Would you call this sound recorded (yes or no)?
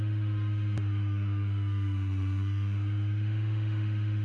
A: no